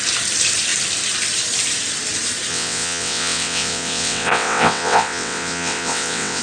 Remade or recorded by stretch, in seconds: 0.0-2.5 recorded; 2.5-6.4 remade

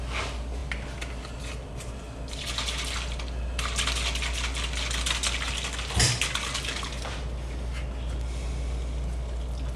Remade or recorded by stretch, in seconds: 0.0-9.8 recorded

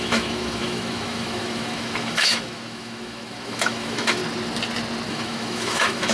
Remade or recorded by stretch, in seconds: 0.0-4.2 remade; 4.2-5.1 recorded; 5.1-6.1 remade

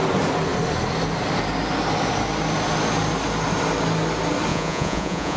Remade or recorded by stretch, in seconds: 0.0-4.5 recorded; 4.5-5.4 remade

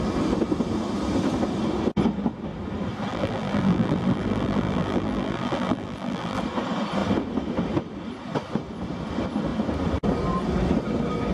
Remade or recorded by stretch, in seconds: 0.0-3.1 recorded; 3.1-6.4 remade; 6.4-11.3 recorded

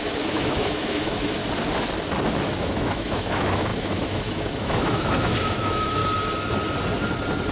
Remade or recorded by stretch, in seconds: 0.0-1.4 remade; 1.4-2.6 recorded; 2.6-6.0 remade; 6.0-7.5 recorded

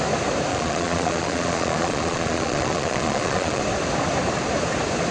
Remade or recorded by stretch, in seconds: 0.0-0.5 recorded; 0.5-3.6 remade; 3.6-5.1 recorded